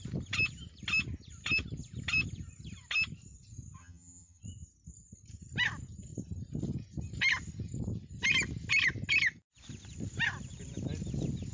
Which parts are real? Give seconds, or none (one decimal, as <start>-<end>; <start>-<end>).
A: 0.0-3.8; 4.4-11.5